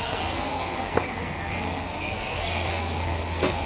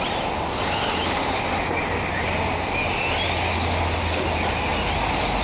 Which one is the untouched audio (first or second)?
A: second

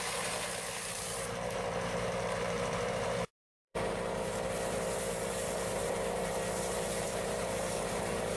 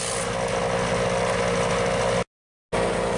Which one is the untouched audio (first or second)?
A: second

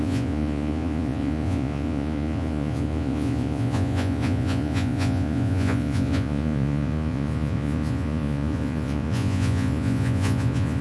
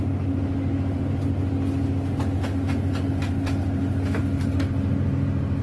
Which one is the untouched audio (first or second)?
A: second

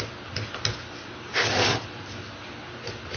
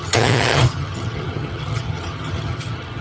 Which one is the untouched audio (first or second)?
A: first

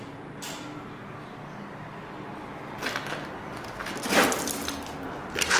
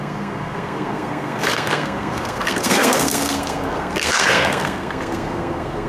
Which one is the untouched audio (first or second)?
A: first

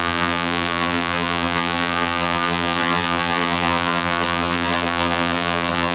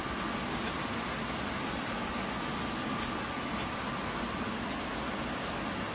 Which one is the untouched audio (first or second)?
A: second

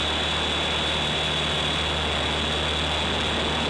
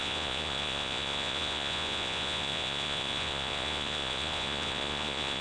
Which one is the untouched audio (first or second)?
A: first